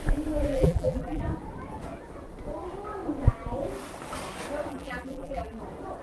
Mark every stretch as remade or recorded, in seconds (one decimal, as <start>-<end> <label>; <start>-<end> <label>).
0.0-0.5 recorded; 0.5-1.2 remade; 1.2-4.7 recorded; 4.7-5.6 remade; 5.6-6.0 recorded